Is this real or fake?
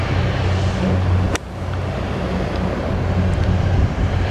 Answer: real